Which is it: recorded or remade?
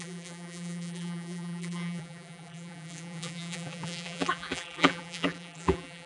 remade